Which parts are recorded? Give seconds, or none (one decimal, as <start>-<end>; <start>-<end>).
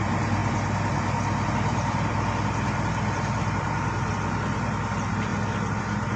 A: 0.0-6.2